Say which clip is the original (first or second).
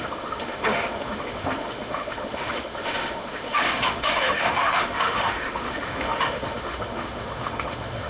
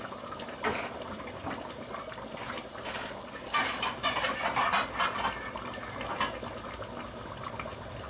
second